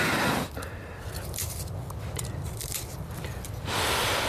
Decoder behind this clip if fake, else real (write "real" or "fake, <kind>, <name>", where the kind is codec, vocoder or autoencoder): real